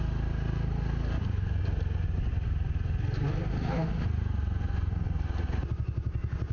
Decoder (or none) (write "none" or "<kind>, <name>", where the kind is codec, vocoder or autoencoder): none